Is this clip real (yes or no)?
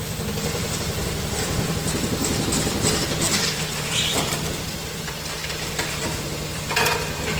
no